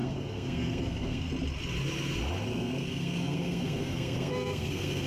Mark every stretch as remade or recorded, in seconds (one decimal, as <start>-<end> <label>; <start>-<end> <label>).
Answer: 0.0-1.3 remade; 1.3-2.5 recorded; 2.5-5.1 remade